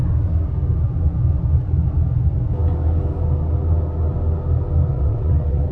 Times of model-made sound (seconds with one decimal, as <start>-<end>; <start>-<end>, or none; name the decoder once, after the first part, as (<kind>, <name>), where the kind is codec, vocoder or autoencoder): 4.9-5.7 (vocoder, WaveNeXt)